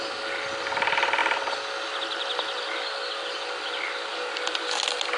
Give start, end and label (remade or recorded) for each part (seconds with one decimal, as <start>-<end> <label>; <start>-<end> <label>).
0.0-5.2 recorded